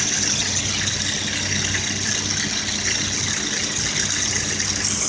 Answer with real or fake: real